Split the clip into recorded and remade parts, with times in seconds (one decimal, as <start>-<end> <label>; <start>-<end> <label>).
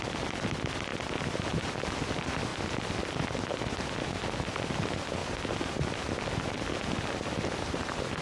0.0-0.9 recorded; 0.9-1.4 remade; 1.4-8.2 recorded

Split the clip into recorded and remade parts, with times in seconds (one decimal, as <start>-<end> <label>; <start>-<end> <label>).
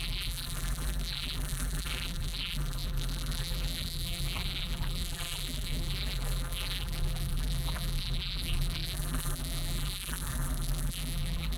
0.0-11.6 remade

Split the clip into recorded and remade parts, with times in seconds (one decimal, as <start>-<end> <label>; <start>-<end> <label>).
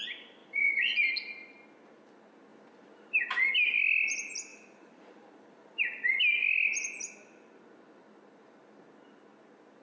0.0-0.4 recorded; 0.4-1.1 remade; 1.1-4.5 recorded; 4.5-6.1 remade; 6.1-9.8 recorded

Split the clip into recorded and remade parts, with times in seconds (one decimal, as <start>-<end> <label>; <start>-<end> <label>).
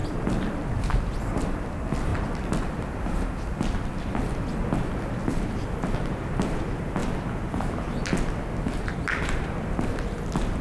0.0-2.1 remade; 2.1-3.5 recorded; 3.5-7.0 remade; 7.0-8.8 recorded; 8.8-10.6 remade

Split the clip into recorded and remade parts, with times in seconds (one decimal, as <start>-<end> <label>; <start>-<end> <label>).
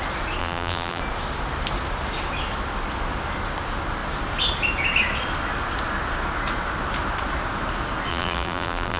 0.0-0.4 recorded; 0.4-1.0 remade; 1.0-8.1 recorded; 8.1-9.0 remade